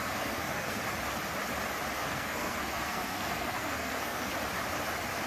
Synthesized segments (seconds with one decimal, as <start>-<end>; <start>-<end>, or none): 0.0-0.8; 2.0-4.3